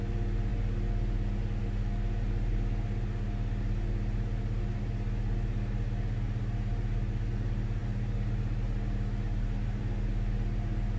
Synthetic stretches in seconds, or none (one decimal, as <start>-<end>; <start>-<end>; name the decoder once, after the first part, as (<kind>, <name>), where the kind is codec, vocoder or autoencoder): none